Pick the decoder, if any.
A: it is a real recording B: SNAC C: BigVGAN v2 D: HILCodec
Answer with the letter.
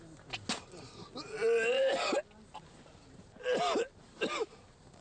A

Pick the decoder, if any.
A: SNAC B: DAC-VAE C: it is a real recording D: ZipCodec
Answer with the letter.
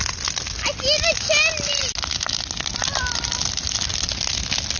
C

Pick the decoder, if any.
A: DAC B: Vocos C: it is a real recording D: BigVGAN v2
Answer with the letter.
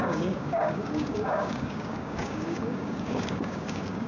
A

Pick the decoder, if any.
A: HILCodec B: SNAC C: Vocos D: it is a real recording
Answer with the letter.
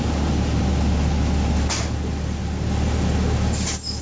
D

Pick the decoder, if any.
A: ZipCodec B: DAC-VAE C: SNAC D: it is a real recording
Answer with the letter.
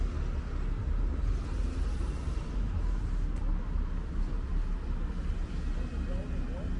D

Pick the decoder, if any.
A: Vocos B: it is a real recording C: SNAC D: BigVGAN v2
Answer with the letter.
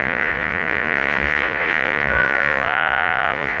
A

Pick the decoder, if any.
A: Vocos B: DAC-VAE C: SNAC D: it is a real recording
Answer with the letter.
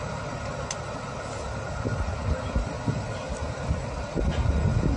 D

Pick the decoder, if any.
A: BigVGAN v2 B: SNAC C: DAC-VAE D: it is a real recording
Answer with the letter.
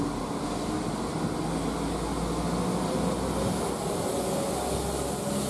D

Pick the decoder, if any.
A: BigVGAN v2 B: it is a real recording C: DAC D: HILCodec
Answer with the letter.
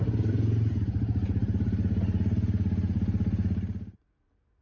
B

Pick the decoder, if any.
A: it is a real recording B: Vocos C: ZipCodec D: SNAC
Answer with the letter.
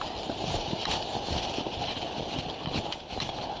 A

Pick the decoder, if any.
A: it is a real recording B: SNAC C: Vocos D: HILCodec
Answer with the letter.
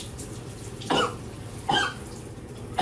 A